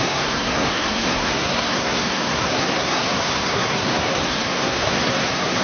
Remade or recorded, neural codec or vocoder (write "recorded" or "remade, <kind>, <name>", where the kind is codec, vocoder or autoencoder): remade, codec, SNAC